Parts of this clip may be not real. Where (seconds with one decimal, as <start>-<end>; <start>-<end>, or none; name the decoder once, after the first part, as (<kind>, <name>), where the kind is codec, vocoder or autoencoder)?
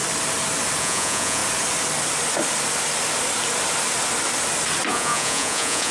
0.8-1.4 (vocoder, Vocos); 4.9-5.9